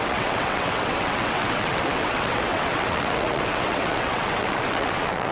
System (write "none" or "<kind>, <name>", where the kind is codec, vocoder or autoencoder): vocoder, WaveNeXt